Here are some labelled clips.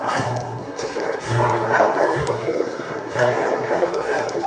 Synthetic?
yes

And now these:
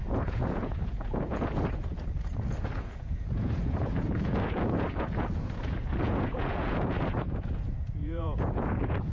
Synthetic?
yes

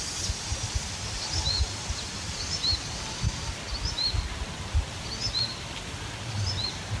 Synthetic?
no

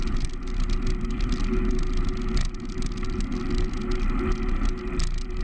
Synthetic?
no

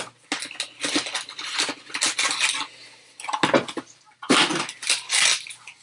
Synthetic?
no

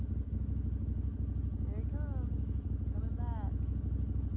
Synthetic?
no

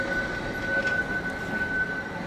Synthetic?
no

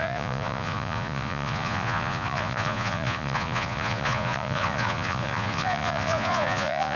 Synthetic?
yes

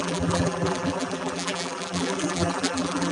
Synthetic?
yes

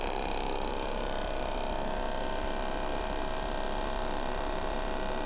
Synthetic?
yes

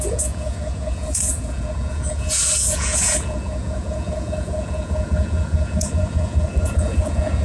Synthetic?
yes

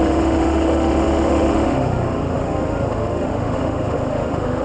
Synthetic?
yes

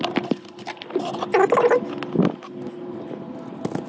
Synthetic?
no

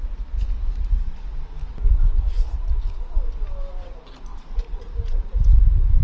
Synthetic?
no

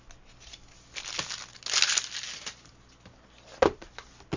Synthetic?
no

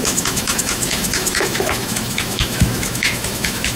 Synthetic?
yes